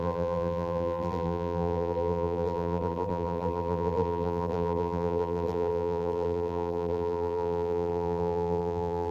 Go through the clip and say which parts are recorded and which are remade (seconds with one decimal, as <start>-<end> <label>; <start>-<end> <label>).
0.0-9.1 remade